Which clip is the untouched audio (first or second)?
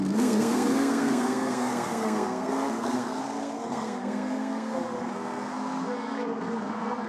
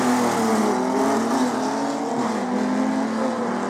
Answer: second